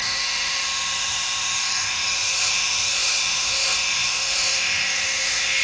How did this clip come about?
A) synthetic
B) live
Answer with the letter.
A